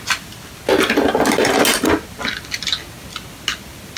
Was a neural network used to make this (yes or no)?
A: no